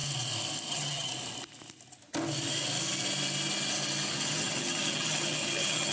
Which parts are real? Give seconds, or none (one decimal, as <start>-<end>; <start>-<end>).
0.0-0.7; 1.1-4.1